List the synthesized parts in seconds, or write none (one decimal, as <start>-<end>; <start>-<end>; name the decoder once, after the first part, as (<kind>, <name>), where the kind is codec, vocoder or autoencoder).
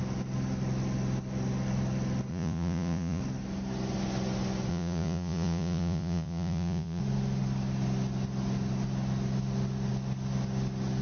2.3-3.2 (vocoder, Vocos); 4.7-7.0